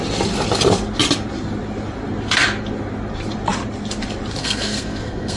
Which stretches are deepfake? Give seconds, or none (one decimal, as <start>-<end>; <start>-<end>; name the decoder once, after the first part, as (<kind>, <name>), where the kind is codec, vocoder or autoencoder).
4.4-5.4 (codec, SNAC)